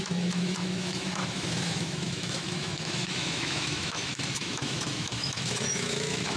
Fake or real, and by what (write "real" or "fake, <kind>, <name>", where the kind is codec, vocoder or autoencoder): fake, autoencoder, DAC-VAE